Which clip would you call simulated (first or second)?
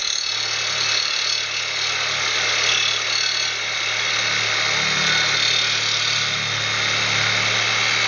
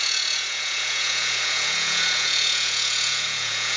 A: second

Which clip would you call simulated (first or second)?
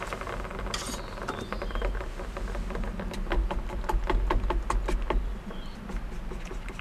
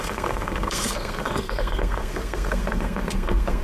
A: second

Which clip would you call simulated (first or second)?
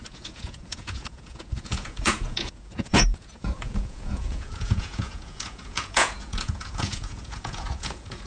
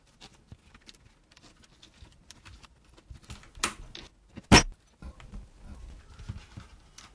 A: first